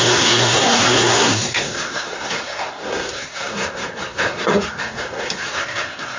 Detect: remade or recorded remade